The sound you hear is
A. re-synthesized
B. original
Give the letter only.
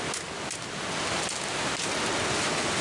B